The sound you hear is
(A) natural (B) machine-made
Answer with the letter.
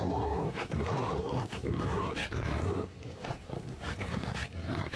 B